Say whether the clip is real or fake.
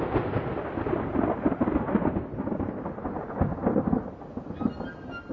real